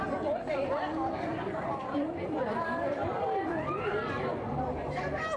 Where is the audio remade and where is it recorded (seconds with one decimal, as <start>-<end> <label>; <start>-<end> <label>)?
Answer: 0.0-1.3 recorded; 1.3-3.8 remade; 3.8-5.4 recorded